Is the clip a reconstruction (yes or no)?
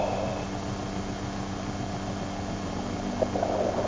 no